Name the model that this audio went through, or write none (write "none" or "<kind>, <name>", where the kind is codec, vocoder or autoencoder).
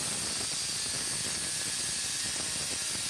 none